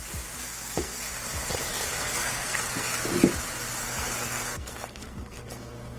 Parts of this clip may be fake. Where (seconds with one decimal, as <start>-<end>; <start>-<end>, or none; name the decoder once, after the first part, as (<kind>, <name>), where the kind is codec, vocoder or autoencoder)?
0.4-1.0 (codec, SNAC); 1.7-3.0; 3.8-6.0